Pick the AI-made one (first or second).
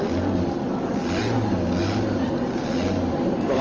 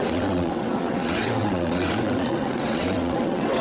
second